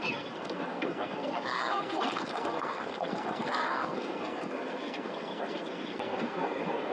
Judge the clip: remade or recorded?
remade